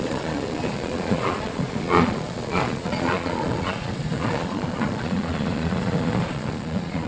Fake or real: fake